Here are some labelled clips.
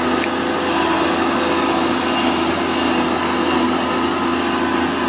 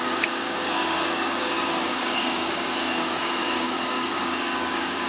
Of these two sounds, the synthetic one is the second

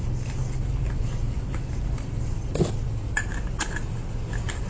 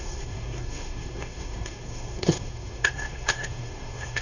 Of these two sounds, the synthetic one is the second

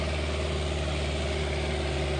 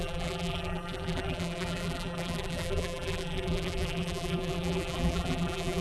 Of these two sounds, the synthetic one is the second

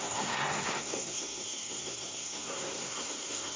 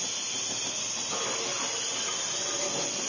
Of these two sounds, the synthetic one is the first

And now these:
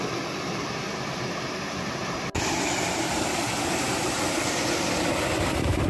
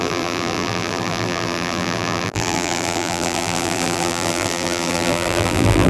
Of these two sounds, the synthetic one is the second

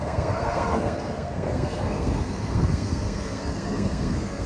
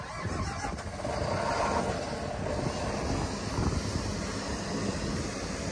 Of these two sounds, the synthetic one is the first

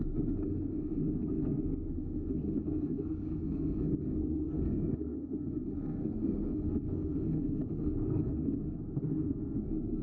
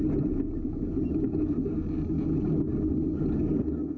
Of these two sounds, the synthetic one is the first